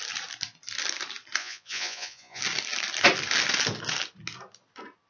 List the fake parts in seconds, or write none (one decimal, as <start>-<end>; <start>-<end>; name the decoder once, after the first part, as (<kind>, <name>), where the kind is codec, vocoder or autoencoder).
1.4-2.4 (vocoder, Vocos)